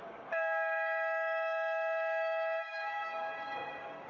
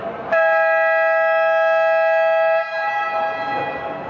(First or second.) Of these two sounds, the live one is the second